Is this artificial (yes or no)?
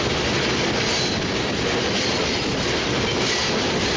no